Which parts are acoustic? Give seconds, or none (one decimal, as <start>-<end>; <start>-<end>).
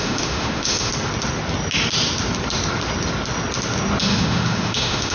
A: 0.9-4.0